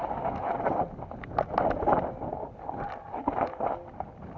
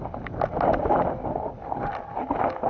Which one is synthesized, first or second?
first